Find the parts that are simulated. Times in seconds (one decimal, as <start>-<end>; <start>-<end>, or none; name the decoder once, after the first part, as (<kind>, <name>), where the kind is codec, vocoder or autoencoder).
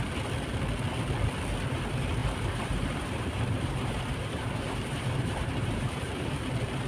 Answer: 2.2-6.3 (vocoder, BigVGAN v2)